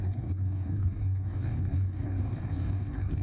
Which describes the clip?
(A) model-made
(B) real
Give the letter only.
A